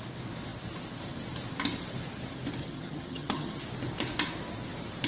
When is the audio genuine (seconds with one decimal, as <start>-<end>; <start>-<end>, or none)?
0.0-2.6; 3.6-5.1